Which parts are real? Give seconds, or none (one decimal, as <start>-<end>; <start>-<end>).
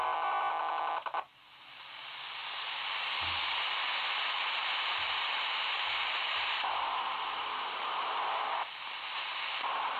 0.0-4.4; 8.2-10.0